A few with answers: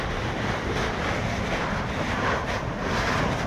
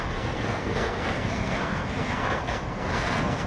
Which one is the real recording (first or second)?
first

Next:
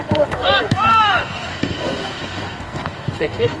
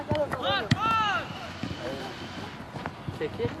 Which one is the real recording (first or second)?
second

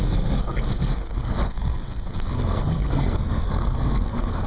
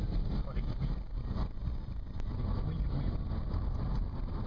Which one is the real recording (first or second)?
second